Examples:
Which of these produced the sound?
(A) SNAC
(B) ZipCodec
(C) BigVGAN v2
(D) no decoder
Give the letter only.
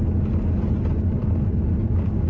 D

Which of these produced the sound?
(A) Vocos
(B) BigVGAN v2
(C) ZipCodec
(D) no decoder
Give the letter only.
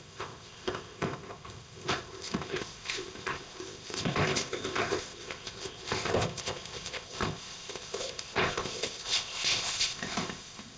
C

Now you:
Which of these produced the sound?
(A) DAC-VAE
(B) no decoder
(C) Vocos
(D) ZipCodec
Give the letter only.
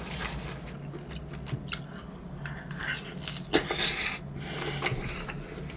B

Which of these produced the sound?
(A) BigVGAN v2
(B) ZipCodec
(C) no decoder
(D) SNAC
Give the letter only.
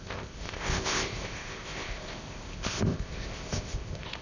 B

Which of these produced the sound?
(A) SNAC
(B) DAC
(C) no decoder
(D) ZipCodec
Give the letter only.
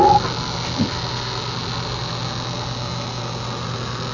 C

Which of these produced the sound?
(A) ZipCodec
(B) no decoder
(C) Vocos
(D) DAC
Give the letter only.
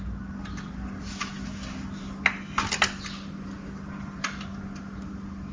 B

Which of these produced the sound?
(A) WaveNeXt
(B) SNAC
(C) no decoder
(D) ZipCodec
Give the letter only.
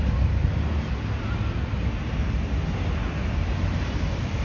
C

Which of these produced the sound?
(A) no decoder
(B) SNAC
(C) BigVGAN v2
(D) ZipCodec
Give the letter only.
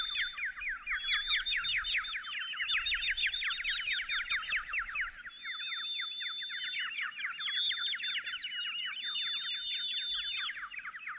A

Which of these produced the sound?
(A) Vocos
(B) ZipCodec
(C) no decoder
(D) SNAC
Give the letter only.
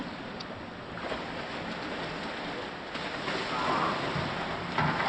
C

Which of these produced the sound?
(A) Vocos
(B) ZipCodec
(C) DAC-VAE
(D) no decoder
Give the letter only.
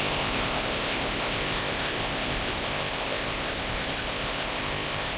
B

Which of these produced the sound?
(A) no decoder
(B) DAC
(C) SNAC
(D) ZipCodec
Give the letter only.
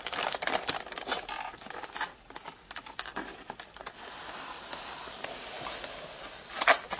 A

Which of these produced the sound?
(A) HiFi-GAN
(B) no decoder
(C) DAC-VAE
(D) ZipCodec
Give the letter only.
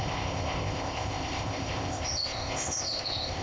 D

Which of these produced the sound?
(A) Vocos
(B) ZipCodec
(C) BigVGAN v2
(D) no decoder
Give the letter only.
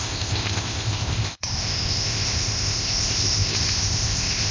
B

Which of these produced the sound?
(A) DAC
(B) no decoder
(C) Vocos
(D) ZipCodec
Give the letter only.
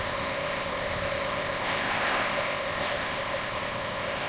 D